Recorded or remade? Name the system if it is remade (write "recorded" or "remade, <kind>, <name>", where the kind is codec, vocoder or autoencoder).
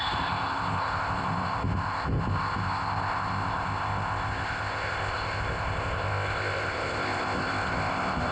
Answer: remade, codec, ZipCodec